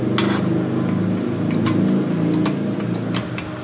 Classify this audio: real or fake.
real